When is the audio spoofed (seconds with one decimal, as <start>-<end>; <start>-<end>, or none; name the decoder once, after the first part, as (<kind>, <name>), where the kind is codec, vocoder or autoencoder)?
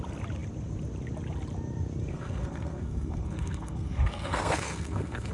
2.1-5.3 (codec, SNAC)